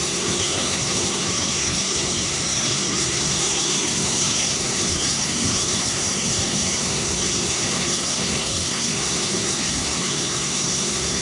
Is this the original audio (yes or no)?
no